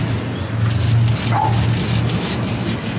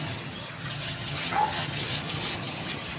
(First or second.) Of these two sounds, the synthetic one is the second